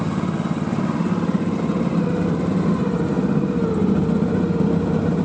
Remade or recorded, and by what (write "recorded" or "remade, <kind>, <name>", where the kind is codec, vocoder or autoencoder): recorded